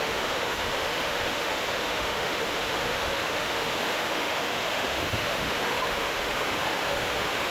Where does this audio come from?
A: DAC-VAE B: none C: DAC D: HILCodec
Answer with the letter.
A